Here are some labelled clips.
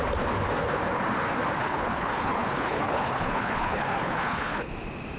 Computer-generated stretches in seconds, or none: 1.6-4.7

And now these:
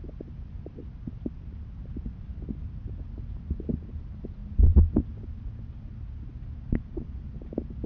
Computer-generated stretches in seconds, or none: none

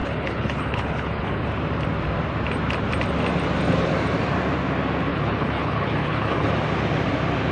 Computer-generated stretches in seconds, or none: 0.0-1.5; 5.1-6.5

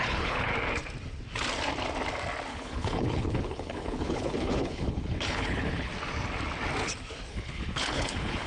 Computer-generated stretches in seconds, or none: 0.0-0.5; 2.5-5.9; 7.3-8.5

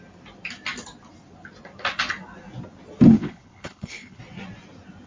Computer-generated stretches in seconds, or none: 3.1-4.2

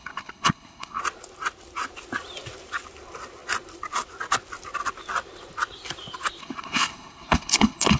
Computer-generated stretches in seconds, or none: 0.0-1.0; 6.4-8.0